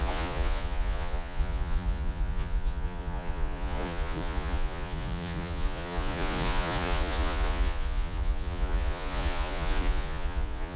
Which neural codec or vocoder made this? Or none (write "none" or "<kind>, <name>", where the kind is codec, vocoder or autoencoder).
vocoder, Vocos